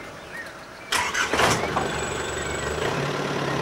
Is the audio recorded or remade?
recorded